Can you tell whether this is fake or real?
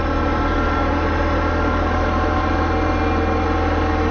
real